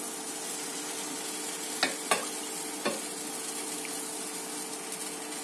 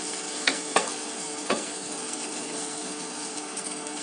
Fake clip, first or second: second